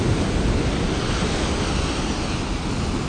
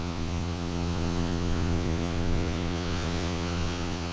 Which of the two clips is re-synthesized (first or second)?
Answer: second